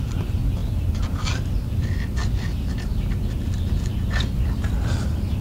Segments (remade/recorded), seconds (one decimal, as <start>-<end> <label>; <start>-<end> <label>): 0.0-5.4 recorded